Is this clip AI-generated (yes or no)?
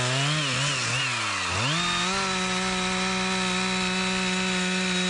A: no